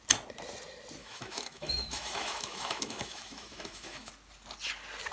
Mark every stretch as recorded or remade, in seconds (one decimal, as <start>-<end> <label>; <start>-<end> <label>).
0.0-1.0 recorded; 1.0-4.1 remade; 4.1-5.1 recorded